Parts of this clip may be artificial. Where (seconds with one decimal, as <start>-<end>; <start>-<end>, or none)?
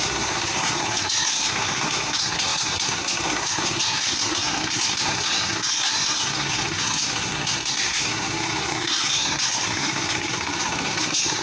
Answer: 0.0-11.4